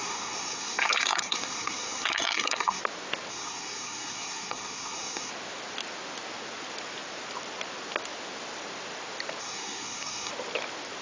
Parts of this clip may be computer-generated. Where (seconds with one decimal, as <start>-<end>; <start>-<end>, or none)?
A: 0.0-2.8; 3.3-5.3; 9.4-10.3